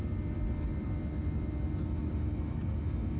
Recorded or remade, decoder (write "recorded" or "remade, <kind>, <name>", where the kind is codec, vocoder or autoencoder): recorded